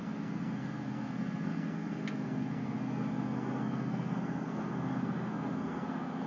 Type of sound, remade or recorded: remade